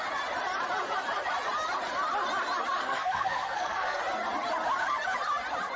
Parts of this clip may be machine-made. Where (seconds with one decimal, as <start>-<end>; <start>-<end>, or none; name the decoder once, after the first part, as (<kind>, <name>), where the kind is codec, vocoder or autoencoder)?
2.8-4.0 (codec, SNAC)